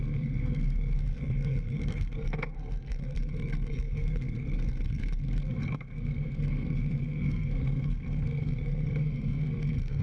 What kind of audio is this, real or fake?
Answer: fake